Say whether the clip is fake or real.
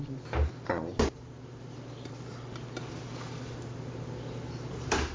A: real